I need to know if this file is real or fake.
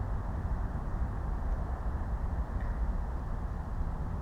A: real